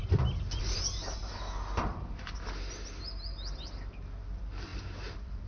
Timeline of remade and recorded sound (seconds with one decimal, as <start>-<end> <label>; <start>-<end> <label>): 0.0-5.5 recorded